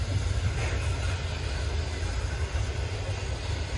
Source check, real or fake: real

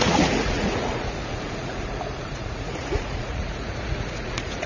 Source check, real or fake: fake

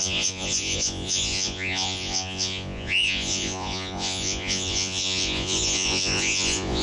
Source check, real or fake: fake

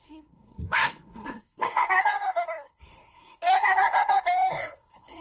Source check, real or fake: fake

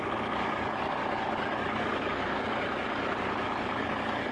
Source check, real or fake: fake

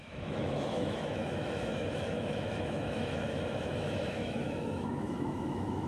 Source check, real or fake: fake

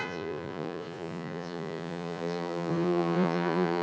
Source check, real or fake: fake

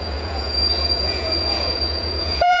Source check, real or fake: fake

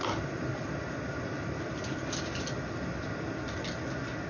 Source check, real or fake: real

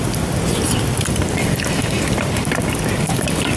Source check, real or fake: real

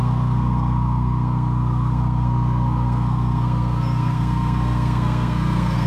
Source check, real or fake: fake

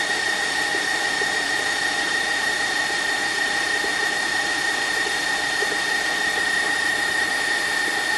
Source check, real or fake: real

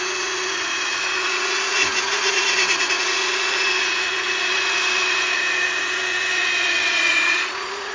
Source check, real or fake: fake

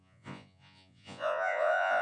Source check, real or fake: fake